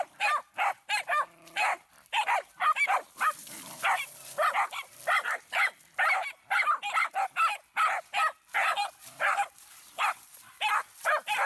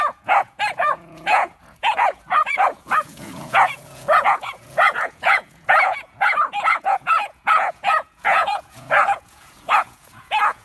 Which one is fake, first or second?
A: second